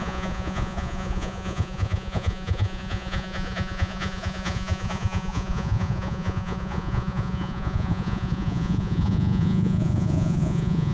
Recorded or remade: remade